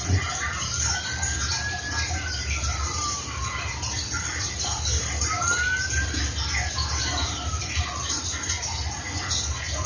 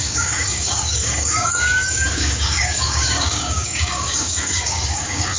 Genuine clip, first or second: first